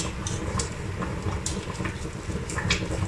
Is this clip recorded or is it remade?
recorded